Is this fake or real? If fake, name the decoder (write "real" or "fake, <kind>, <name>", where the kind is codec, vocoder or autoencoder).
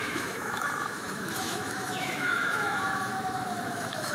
fake, autoencoder, DAC-VAE